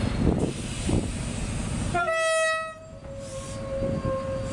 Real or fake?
real